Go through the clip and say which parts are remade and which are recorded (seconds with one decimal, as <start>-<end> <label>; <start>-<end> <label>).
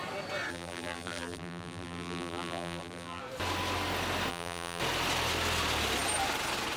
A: 0.0-0.5 recorded; 0.5-3.2 remade; 3.2-4.3 recorded; 4.3-4.8 remade; 4.8-6.8 recorded